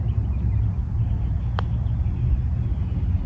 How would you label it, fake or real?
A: real